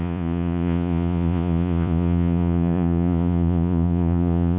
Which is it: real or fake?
fake